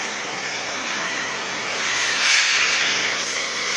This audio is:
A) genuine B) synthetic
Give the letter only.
B